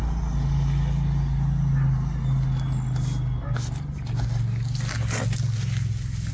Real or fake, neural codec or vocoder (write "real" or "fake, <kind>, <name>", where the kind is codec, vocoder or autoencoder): real